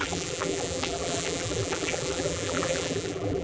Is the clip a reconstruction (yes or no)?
yes